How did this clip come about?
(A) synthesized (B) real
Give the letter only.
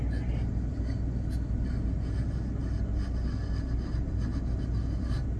B